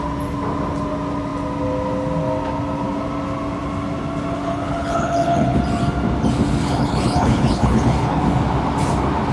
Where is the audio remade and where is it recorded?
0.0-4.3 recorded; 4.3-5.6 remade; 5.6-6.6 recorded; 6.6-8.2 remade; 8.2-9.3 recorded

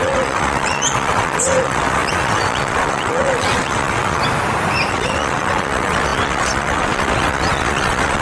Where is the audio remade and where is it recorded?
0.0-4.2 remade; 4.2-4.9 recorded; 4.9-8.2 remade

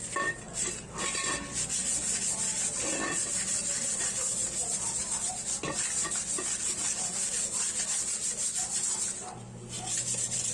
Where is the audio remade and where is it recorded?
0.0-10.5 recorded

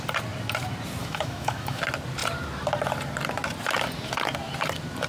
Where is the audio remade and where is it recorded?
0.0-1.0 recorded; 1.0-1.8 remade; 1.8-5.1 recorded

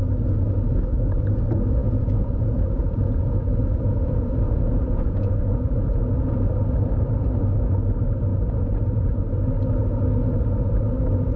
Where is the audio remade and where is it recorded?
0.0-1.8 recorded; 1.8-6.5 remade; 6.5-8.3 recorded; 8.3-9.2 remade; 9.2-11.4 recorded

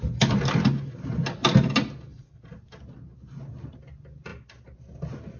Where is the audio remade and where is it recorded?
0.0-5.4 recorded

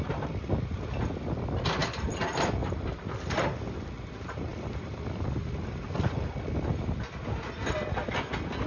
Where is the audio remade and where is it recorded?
0.0-1.8 recorded; 1.8-3.0 remade; 3.0-4.5 recorded; 4.5-6.3 remade; 6.3-8.7 recorded

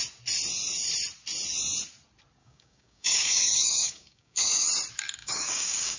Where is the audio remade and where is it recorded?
0.0-2.4 recorded; 2.4-4.7 remade; 4.7-5.2 recorded; 5.2-6.0 remade